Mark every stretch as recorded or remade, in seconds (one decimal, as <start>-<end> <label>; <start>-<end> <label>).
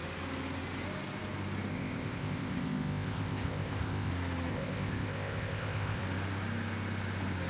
0.0-1.7 recorded; 1.7-4.1 remade; 4.1-4.5 recorded; 4.5-6.0 remade; 6.0-7.5 recorded